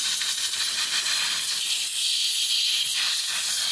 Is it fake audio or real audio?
fake